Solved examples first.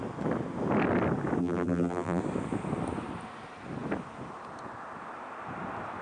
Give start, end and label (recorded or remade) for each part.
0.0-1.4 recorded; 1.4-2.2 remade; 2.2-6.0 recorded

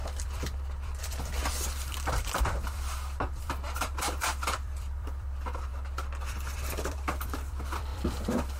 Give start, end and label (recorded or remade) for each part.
0.0-5.7 remade; 5.7-6.3 recorded; 6.3-8.6 remade